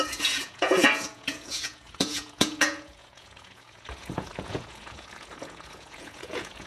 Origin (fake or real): fake